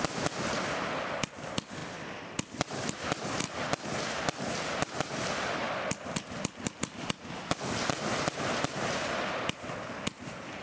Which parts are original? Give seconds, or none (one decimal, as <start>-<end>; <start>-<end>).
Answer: 0.0-10.6